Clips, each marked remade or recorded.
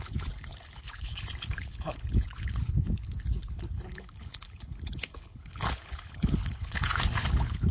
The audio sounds remade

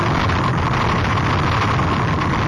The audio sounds recorded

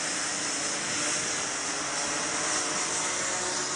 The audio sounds recorded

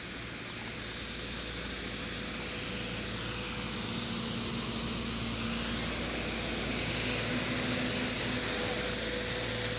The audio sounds recorded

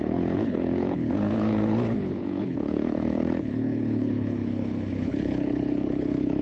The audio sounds remade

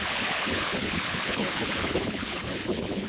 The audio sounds remade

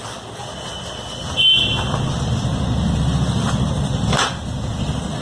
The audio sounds recorded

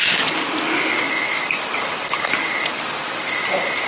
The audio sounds recorded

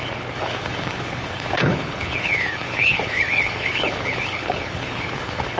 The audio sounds remade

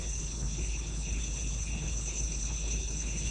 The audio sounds remade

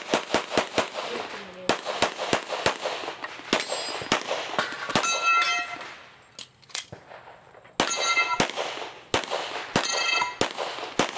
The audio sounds recorded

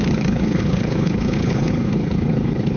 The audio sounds remade